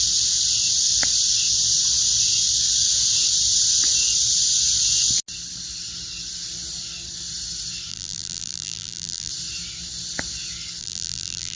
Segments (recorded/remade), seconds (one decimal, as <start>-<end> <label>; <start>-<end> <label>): 0.0-7.9 recorded; 7.9-9.3 remade; 9.3-10.8 recorded; 10.8-11.6 remade